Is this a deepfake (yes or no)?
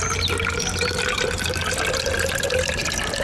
no